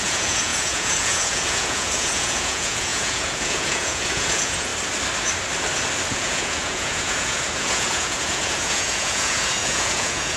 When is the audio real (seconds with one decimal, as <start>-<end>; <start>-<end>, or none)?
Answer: 4.7-6.1